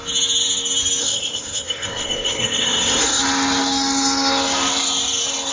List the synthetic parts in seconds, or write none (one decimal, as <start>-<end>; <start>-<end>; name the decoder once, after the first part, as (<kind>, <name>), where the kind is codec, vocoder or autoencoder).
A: 1.0-3.2 (codec, SNAC)